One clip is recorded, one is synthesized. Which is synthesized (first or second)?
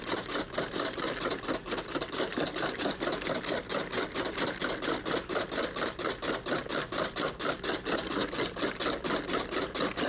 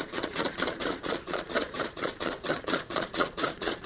second